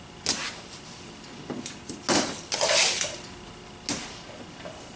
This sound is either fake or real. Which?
real